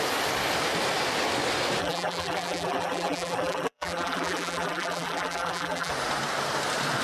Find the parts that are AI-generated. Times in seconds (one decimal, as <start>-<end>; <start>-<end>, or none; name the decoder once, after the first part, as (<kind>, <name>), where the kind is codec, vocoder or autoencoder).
1.8-5.9 (vocoder, BigVGAN v2)